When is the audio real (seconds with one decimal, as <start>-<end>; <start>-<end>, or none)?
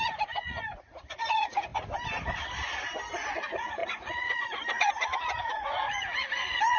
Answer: 1.7-3.3